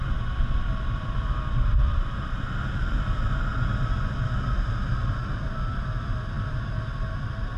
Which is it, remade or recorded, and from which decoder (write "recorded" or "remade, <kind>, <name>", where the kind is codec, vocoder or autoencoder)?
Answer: recorded